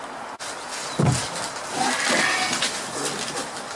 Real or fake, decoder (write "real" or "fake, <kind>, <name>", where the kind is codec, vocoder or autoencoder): real